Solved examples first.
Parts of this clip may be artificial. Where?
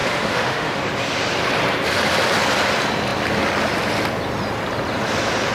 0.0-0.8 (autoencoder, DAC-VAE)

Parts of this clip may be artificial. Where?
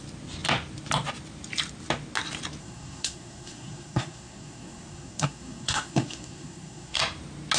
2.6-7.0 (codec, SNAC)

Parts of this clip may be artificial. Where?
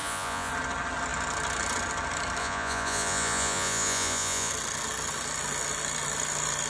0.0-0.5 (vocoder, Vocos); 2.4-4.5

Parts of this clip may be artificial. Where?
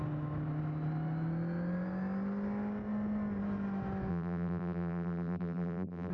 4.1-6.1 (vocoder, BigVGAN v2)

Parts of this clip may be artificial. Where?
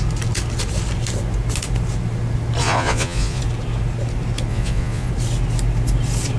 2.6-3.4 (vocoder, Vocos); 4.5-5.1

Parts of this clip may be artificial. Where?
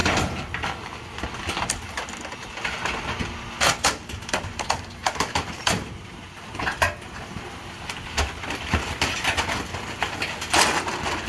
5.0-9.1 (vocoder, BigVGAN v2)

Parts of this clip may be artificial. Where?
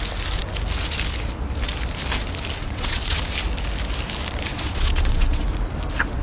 2.6-3.2 (vocoder, WaveNeXt); 4.5-5.4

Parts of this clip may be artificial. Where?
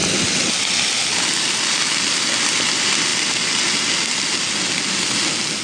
none